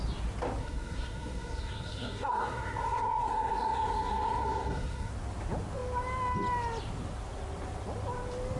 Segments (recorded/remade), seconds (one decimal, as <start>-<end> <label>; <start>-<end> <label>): 0.0-0.6 recorded; 0.6-5.1 remade; 5.1-8.6 recorded